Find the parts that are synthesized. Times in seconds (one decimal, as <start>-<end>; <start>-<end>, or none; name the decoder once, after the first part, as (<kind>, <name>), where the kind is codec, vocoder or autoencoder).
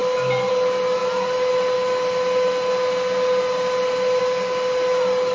none